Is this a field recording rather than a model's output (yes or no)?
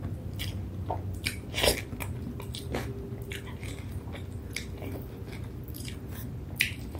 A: yes